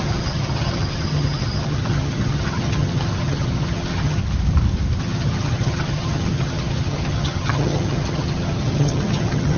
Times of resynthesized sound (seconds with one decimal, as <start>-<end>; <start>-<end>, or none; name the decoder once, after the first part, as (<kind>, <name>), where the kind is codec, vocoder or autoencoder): 0.0-4.2 (vocoder, HiFi-GAN); 5.0-9.6

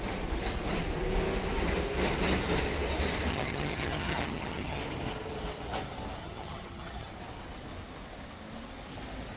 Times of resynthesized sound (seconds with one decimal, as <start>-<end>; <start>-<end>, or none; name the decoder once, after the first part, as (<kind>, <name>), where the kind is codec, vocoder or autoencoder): 3.3-4.8 (vocoder, HiFi-GAN); 6.2-7.1

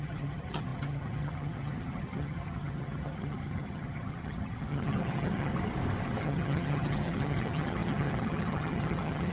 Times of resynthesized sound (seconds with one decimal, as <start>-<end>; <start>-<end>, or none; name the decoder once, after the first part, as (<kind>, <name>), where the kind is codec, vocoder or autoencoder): 0.0-5.5 (vocoder, HiFi-GAN); 6.2-9.3

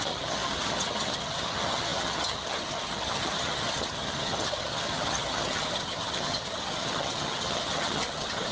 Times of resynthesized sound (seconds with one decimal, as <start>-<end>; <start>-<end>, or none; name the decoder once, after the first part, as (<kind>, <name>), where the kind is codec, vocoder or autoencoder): 0.0-8.5 (vocoder, HiFi-GAN)

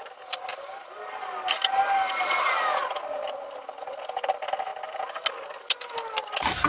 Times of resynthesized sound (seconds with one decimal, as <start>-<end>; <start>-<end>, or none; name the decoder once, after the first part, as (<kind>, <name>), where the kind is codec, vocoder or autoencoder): none

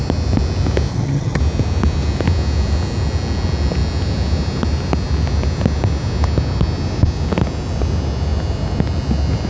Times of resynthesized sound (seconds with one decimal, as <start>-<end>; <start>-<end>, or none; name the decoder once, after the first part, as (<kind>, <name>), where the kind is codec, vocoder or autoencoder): 0.9-1.4 (vocoder, HiFi-GAN)

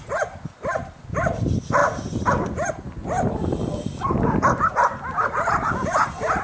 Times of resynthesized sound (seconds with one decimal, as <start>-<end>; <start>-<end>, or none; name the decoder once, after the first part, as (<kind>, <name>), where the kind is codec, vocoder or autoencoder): none

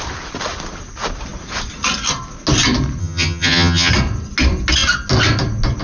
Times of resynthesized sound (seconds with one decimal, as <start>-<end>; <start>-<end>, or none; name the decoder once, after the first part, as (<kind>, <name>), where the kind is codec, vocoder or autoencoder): 3.0-3.9 (vocoder, HiFi-GAN)